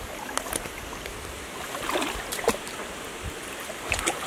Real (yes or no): yes